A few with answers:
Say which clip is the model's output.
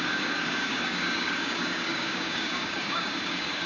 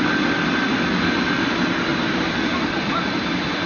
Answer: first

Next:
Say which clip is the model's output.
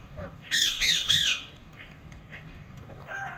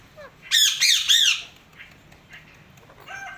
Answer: first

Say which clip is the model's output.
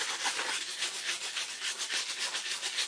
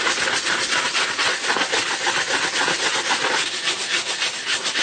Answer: first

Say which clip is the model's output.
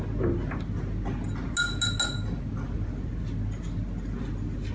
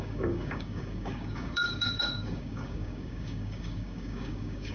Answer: second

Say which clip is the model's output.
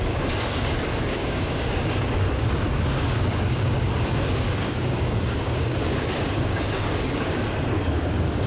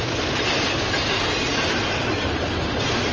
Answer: first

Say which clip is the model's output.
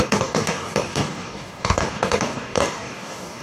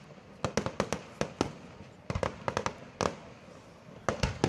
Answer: first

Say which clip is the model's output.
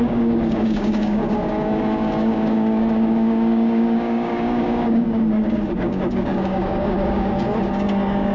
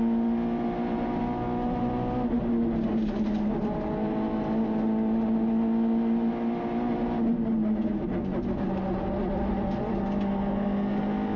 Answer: first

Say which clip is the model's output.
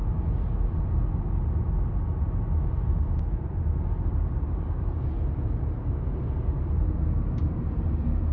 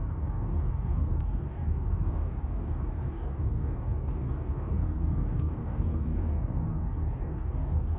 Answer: second